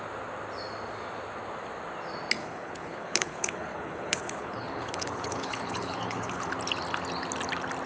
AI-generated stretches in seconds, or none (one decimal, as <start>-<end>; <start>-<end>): 2.4-6.5